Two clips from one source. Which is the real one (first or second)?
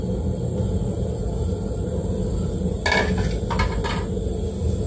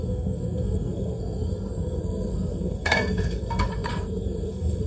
first